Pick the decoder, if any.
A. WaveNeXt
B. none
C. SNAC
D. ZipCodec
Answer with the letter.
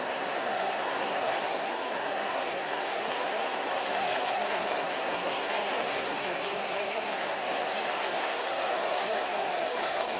C